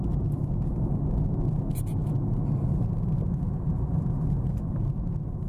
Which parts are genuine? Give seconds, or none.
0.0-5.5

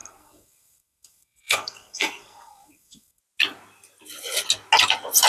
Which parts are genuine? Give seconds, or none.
3.2-5.3